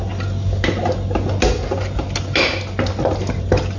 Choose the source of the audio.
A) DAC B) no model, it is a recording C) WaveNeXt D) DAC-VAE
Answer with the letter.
B